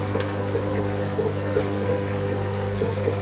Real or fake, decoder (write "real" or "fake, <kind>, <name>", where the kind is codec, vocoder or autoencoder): fake, codec, SNAC